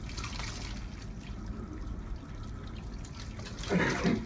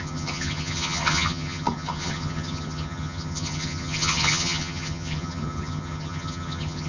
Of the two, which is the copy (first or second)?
second